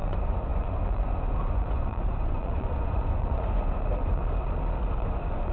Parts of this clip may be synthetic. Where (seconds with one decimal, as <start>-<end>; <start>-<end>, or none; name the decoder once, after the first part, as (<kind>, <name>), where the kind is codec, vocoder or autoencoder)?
0.0-4.2 (vocoder, Vocos); 4.9-5.5